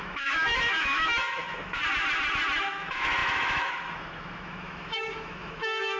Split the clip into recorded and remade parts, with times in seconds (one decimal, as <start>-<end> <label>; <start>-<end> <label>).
0.0-1.8 remade; 1.8-2.6 recorded; 2.6-6.0 remade